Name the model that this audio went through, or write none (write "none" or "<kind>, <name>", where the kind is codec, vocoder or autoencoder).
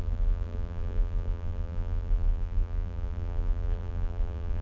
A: vocoder, BigVGAN v2